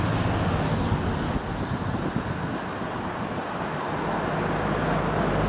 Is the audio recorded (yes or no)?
yes